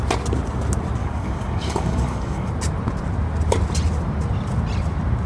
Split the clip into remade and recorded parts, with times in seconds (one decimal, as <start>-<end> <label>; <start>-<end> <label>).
0.0-1.0 recorded; 1.0-2.5 remade; 2.5-5.3 recorded